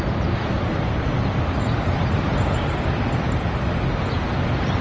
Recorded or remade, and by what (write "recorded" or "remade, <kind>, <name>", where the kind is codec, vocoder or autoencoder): recorded